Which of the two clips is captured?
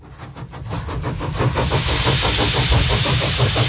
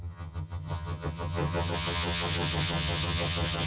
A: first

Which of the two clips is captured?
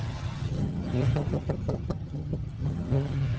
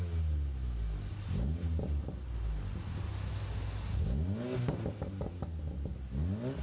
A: second